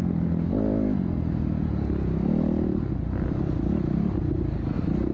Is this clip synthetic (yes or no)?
no